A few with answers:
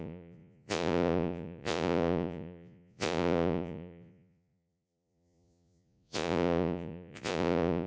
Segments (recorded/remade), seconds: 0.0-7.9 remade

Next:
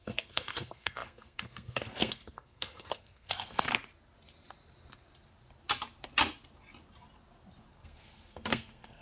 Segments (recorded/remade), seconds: 0.0-3.7 remade; 3.7-7.7 recorded; 7.7-9.0 remade

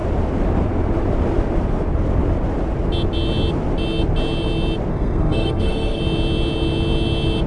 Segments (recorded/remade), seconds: 0.0-4.9 recorded; 4.9-6.0 remade; 6.0-7.5 recorded

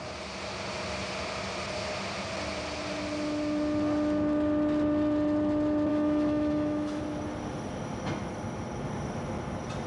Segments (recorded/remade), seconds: 0.0-5.9 recorded; 5.9-7.0 remade; 7.0-9.9 recorded

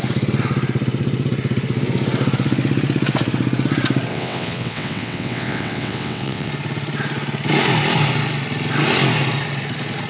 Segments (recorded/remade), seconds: 0.0-4.1 recorded; 4.1-6.5 remade; 6.5-10.1 recorded

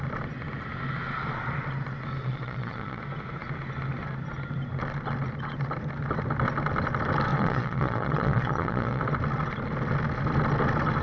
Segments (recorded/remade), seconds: 0.0-2.2 recorded; 2.2-3.0 remade; 3.0-7.3 recorded; 7.3-9.0 remade; 9.0-11.0 recorded